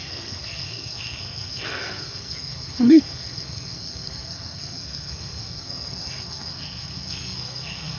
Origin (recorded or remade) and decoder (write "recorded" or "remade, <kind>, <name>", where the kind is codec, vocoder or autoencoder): remade, codec, SNAC